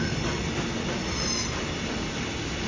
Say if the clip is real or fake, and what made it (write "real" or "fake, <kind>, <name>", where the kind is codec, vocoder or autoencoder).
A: real